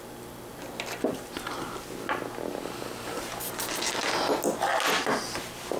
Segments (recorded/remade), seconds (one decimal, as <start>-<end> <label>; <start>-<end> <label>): 0.0-5.8 recorded